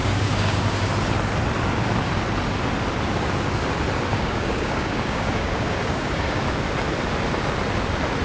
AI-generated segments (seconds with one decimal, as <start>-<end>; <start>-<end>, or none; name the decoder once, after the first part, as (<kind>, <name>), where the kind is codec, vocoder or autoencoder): 0.0-0.9 (codec, DAC); 4.1-6.4